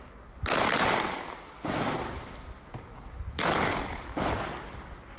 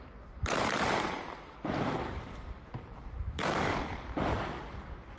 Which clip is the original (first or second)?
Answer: first